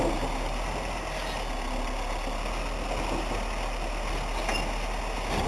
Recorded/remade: recorded